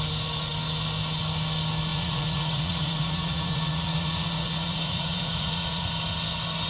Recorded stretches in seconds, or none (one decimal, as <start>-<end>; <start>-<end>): 0.0-1.9; 5.9-6.7